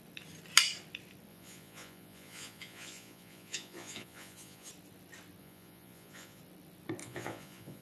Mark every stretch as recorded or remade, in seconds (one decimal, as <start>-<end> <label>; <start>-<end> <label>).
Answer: 0.0-1.3 recorded; 1.3-4.7 remade; 4.7-5.4 recorded; 5.4-6.4 remade; 6.4-7.0 recorded; 7.0-7.8 remade